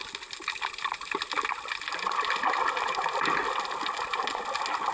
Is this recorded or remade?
recorded